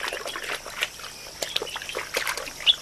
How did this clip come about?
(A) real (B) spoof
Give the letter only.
A